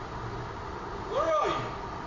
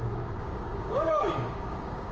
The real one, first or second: first